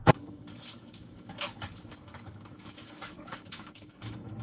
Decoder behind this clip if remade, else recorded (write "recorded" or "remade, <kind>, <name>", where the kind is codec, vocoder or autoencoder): remade, codec, DAC